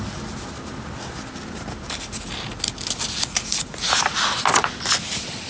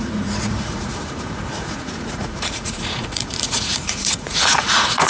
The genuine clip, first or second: first